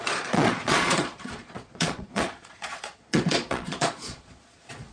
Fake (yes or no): yes